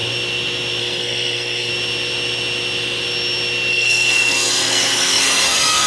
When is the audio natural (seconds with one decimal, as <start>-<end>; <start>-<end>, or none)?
0.0-0.8; 1.7-3.7